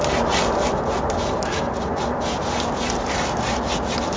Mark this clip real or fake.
real